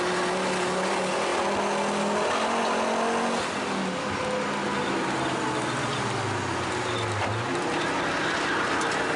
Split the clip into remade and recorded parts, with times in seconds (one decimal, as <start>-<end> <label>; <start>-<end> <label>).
0.0-9.2 recorded